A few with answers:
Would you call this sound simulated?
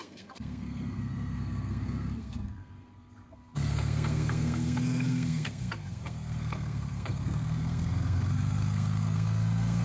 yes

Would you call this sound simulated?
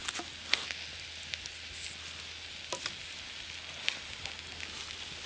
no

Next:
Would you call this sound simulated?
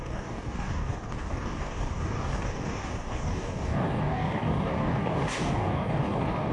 yes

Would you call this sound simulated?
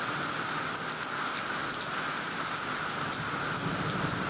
no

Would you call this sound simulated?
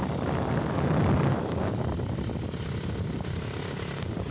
no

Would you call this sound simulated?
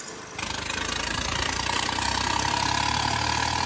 no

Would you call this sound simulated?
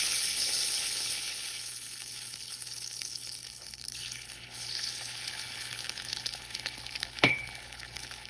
yes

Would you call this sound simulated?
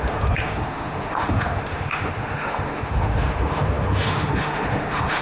yes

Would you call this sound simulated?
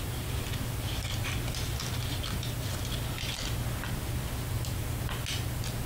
no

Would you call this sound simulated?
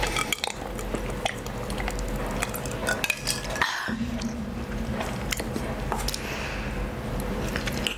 no